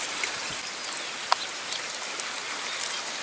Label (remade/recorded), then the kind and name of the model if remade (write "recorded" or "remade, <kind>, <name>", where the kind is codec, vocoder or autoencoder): recorded